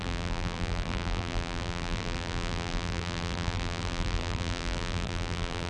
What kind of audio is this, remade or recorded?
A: remade